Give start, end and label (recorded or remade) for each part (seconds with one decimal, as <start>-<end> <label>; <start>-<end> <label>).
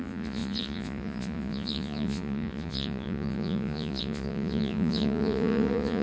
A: 0.0-6.0 remade